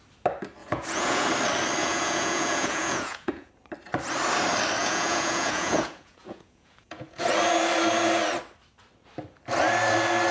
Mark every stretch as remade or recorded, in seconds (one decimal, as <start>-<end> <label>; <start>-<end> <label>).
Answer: 0.0-0.6 recorded; 0.6-1.3 remade; 1.3-1.8 recorded; 1.8-3.5 remade; 3.5-4.8 recorded; 4.8-7.3 remade; 7.3-10.3 recorded